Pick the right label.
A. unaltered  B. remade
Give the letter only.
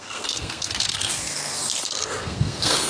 B